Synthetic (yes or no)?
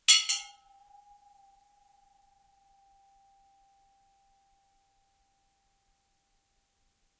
no